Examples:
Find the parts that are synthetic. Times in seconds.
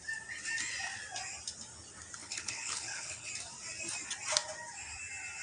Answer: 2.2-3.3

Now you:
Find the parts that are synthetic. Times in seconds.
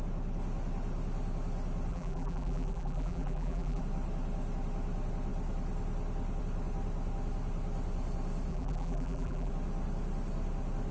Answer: 1.9-3.8; 8.5-9.5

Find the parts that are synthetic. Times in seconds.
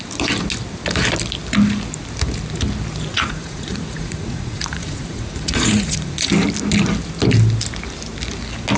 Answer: 3.1-6.3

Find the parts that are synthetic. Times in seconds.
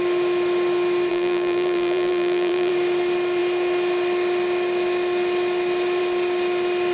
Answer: 1.1-2.7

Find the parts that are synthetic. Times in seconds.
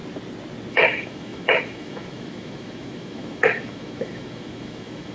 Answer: 0.7-5.1